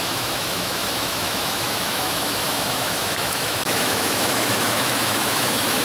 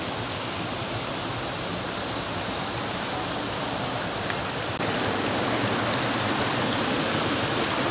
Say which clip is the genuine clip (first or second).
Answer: second